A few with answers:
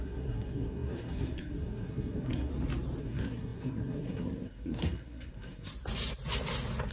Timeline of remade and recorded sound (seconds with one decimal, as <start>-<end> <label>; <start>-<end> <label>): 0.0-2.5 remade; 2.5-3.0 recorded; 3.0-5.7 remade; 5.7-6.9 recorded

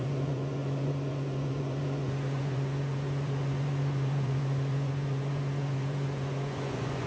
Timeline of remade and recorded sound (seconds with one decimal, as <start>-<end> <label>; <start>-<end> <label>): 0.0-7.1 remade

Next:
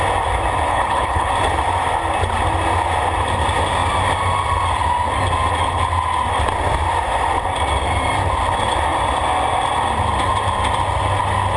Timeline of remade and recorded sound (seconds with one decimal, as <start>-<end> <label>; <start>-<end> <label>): 0.0-0.7 recorded; 0.7-1.3 remade; 1.3-11.6 recorded